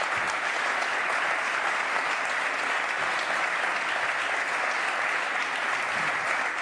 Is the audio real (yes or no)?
yes